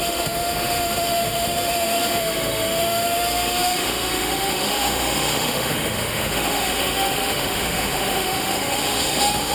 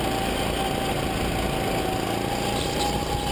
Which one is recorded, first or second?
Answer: second